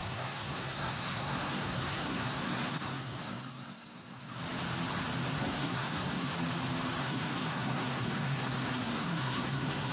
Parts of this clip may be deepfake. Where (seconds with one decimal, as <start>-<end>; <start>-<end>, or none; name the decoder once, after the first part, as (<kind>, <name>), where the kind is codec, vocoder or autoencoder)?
0.0-4.4 (codec, SNAC); 5.3-6.3; 7.0-9.9